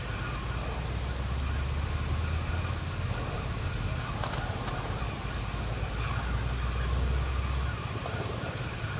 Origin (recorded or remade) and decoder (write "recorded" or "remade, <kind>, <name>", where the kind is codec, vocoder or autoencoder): recorded